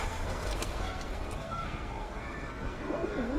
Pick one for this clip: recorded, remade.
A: remade